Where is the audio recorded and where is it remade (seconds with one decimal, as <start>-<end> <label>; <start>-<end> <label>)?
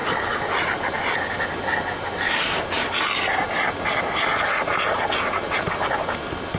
0.0-6.6 recorded